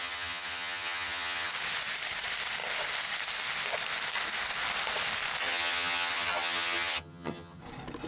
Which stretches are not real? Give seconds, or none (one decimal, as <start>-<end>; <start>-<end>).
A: 0.0-1.5; 5.4-7.6